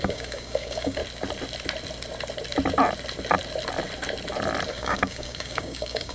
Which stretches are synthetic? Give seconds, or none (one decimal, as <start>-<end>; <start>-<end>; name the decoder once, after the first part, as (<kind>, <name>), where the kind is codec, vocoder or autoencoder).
0.0-1.0 (codec, DAC); 4.7-6.1